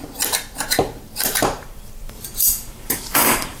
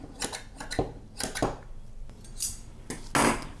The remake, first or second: first